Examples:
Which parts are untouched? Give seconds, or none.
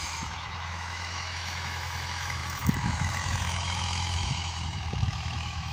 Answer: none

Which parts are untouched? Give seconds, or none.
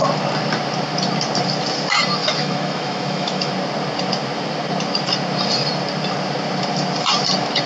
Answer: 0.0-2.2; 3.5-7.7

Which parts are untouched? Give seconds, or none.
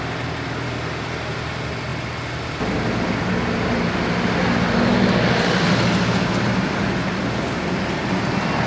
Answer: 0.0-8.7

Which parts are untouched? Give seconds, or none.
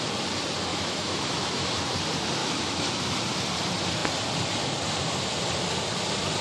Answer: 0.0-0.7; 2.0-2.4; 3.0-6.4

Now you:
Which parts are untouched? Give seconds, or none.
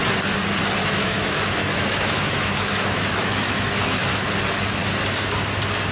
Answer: 0.0-0.8; 4.3-5.9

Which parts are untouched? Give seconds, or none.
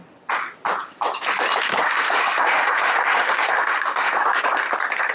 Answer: 0.0-1.7; 4.5-5.1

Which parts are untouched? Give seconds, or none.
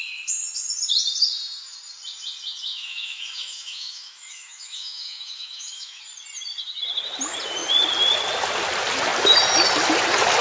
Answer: 0.0-2.7; 6.0-10.4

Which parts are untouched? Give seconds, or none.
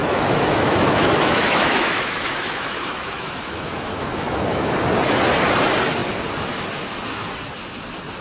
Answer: 4.7-8.2